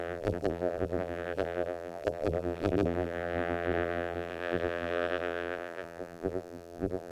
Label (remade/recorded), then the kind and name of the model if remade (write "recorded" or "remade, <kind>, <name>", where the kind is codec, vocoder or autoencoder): remade, vocoder, BigVGAN v2